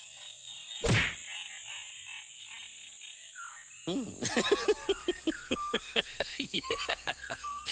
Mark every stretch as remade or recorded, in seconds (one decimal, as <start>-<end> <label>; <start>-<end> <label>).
0.0-5.4 recorded; 5.4-7.7 remade